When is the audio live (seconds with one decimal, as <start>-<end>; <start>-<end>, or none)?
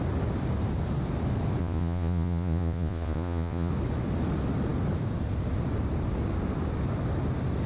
0.0-1.6; 3.7-7.7